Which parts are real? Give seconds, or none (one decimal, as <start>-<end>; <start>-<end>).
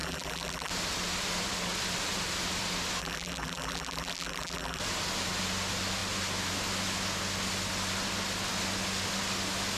0.7-3.0; 4.8-9.8